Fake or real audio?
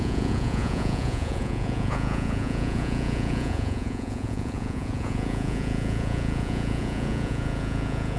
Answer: fake